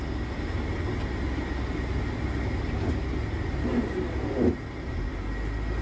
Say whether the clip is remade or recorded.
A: recorded